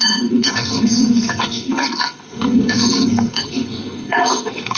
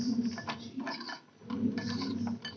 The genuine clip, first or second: second